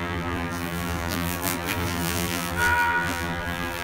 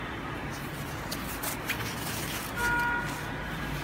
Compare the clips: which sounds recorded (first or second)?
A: second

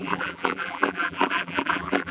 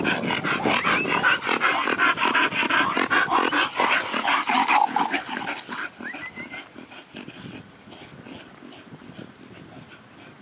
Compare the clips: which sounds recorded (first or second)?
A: second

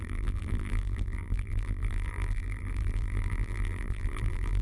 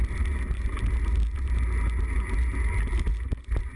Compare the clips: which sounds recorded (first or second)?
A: second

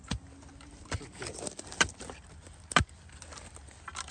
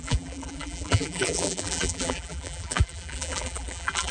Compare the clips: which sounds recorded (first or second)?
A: first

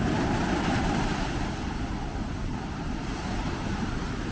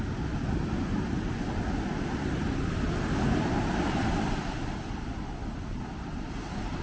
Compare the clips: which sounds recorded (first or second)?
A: second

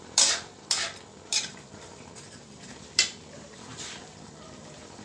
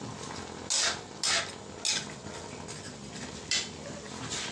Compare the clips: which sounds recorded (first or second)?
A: second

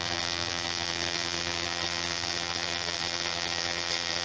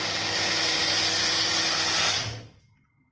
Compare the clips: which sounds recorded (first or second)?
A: second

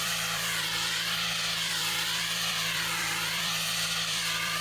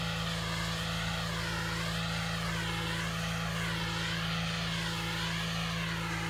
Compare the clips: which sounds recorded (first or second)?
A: second